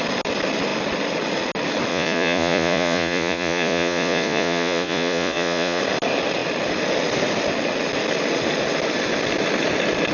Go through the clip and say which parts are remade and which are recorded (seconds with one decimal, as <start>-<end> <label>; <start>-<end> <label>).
0.0-1.9 recorded; 1.9-5.8 remade; 5.8-10.1 recorded